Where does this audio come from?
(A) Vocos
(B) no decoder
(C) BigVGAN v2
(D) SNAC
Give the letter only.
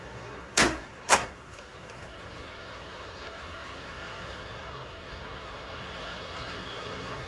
D